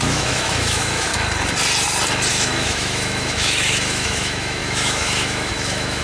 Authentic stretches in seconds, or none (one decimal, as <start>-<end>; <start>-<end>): 1.1-2.3